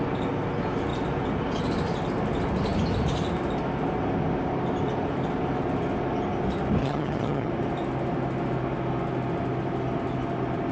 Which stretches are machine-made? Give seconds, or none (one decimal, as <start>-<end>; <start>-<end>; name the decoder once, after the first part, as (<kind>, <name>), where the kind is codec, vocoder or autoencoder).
6.8-7.5 (vocoder, HiFi-GAN)